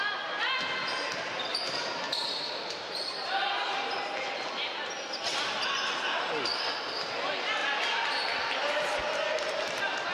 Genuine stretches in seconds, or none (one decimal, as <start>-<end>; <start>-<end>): 0.0-1.5; 4.0-10.1